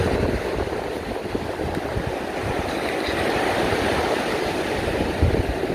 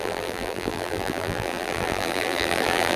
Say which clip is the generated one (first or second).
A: second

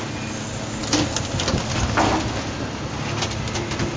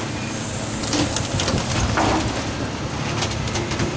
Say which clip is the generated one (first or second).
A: second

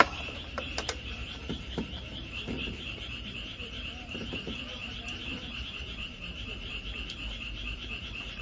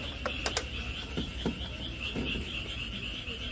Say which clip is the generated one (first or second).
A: first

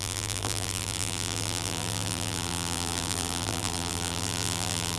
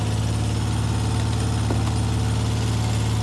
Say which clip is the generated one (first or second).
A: first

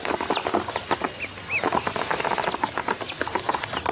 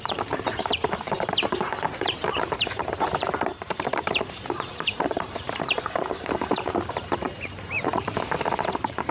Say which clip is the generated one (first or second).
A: second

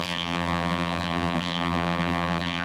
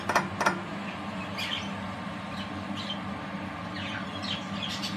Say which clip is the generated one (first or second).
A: first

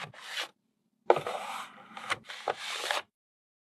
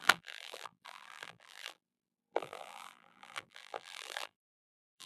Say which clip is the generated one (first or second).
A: second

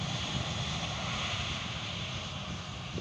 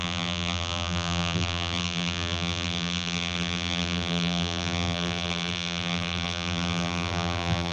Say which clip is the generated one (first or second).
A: second